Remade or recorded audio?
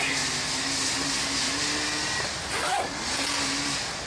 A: recorded